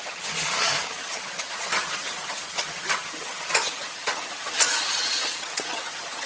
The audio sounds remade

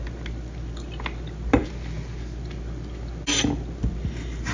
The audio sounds recorded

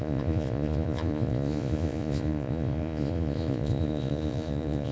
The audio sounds remade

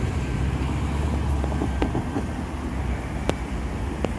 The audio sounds recorded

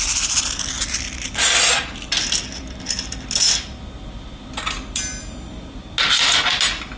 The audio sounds recorded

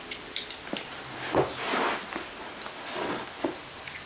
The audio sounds recorded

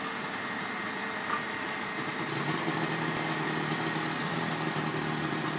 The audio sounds recorded